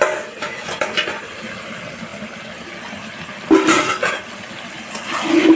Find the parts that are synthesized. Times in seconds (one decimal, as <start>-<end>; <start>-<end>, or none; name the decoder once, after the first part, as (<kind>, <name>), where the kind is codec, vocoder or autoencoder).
0.4-1.2 (vocoder, Vocos)